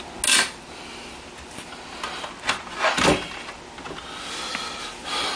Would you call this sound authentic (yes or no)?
yes